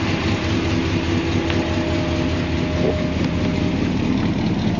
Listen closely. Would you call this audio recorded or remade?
recorded